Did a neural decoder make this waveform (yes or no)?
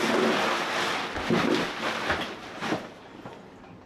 no